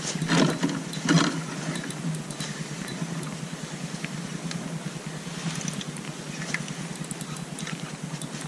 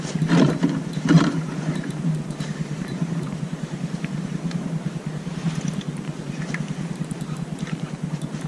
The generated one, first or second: second